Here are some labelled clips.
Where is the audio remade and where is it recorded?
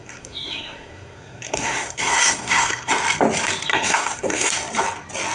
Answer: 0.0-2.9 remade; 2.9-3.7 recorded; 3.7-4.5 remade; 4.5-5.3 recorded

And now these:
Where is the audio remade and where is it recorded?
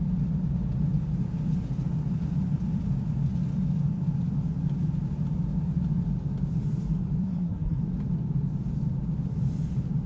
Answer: 0.0-7.2 recorded; 7.2-7.8 remade; 7.8-10.1 recorded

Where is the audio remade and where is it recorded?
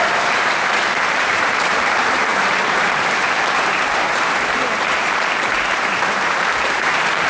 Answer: 0.0-7.3 remade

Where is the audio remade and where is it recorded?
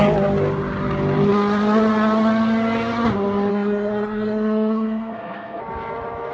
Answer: 0.0-3.5 recorded; 3.5-5.6 remade; 5.6-6.3 recorded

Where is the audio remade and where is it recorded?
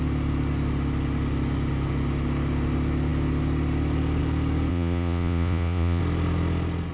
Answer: 0.0-4.7 recorded; 4.7-6.0 remade; 6.0-6.9 recorded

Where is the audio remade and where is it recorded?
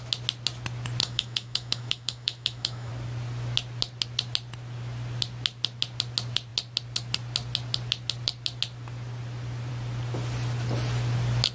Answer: 0.0-1.0 recorded; 1.0-2.9 remade; 2.9-11.5 recorded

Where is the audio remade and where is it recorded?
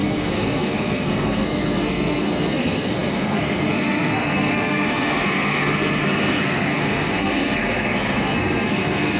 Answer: 0.0-9.2 remade